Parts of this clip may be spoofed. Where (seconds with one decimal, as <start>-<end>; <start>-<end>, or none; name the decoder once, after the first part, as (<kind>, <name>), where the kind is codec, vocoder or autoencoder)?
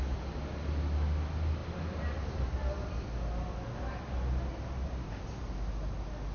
none